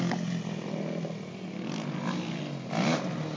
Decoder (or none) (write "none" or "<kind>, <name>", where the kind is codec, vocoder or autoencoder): none